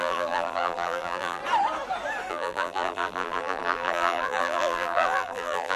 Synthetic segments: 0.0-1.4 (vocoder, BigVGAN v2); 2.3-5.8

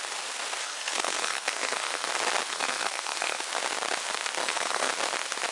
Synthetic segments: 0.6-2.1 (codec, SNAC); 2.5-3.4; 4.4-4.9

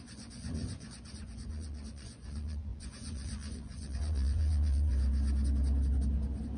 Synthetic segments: 0.0-4.9 (vocoder, Vocos)